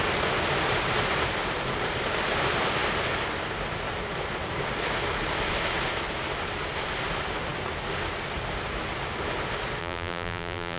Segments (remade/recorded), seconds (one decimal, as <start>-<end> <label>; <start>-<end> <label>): 0.0-9.8 recorded; 9.8-10.8 remade